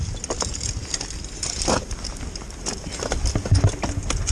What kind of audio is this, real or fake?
real